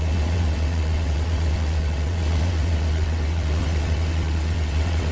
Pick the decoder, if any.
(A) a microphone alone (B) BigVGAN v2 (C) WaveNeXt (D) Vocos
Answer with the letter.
C